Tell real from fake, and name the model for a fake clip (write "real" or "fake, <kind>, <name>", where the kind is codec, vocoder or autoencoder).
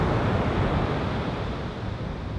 real